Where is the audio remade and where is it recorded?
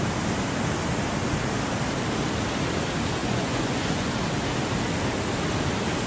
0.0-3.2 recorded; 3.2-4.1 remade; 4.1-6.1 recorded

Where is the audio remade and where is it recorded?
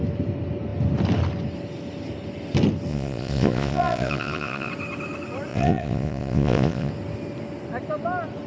0.0-2.9 recorded; 2.9-4.7 remade; 4.7-5.5 recorded; 5.5-6.9 remade; 6.9-8.5 recorded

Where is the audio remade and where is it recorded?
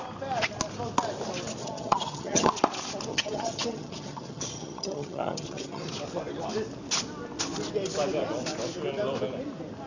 0.0-1.6 recorded; 1.6-2.5 remade; 2.5-3.1 recorded; 3.1-5.8 remade; 5.8-9.9 recorded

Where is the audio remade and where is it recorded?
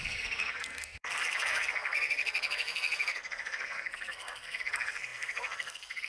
0.0-6.1 remade